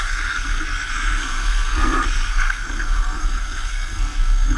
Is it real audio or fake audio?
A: fake